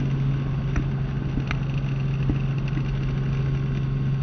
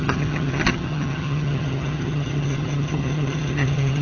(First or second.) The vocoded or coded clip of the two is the second